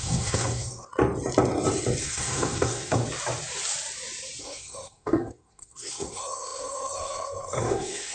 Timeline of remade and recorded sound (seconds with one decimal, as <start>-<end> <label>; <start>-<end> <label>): 0.0-0.9 remade; 0.9-2.0 recorded; 2.0-3.0 remade; 3.0-4.4 recorded; 4.4-8.1 remade